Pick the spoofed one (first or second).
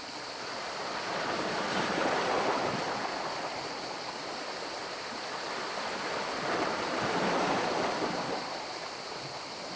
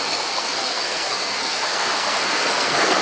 second